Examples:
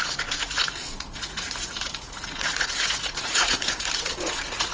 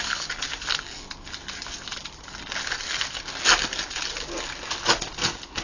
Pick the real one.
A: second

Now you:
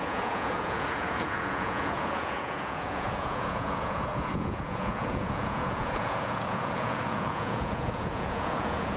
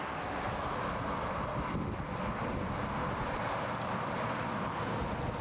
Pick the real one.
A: second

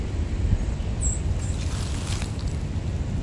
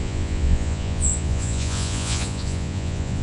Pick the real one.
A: first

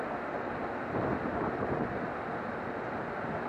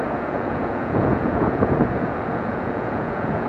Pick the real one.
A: first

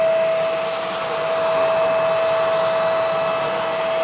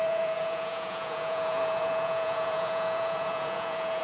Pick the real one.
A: first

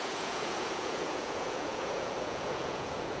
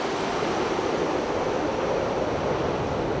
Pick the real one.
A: second